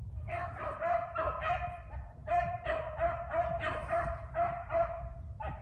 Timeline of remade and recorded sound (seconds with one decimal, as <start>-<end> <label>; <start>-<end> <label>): 0.0-5.6 remade